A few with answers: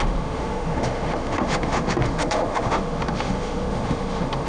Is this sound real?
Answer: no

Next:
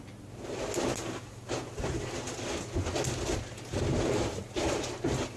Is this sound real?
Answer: yes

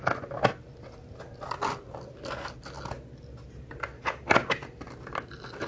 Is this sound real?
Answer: yes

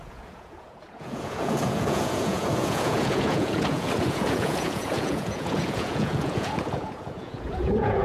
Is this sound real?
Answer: no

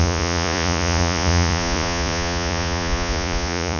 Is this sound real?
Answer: no